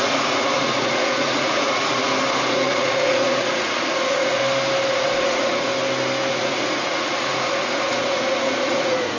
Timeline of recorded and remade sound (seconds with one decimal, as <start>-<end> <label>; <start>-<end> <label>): 0.0-2.0 remade; 2.0-2.5 recorded; 2.5-4.4 remade; 4.4-4.9 recorded; 4.9-5.7 remade; 5.7-6.3 recorded; 6.3-9.2 remade